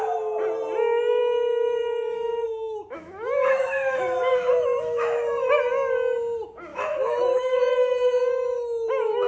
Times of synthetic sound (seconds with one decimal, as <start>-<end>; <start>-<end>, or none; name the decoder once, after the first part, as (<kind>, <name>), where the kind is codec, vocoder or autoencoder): 1.2-5.5 (autoencoder, DAC-VAE); 6.7-9.3